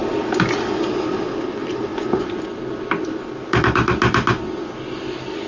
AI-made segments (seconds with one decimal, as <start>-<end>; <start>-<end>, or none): none